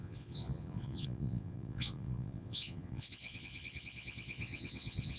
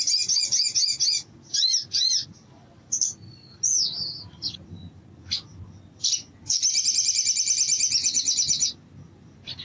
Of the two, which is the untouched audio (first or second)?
second